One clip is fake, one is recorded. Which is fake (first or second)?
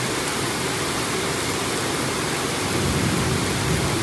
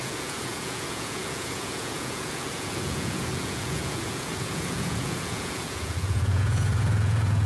second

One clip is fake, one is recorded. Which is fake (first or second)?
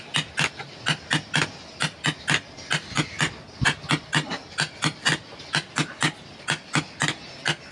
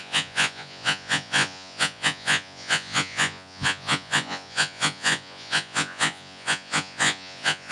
second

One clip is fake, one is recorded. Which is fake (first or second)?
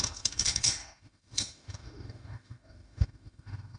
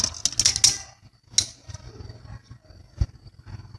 first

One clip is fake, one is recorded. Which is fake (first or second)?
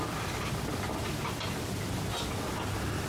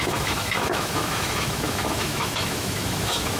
second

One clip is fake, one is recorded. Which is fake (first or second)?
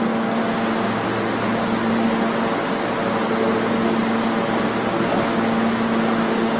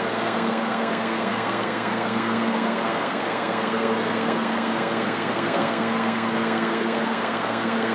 second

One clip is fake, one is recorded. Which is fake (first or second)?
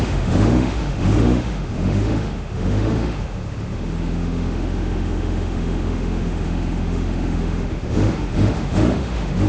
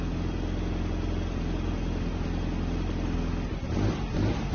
first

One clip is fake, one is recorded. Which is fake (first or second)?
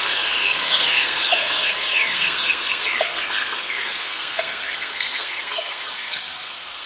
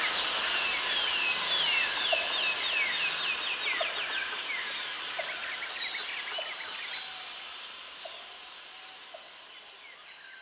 first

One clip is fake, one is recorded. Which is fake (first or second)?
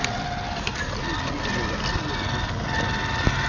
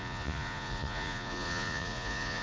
second